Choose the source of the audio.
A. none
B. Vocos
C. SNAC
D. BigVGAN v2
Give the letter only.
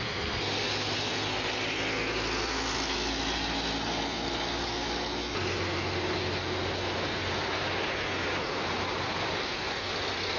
A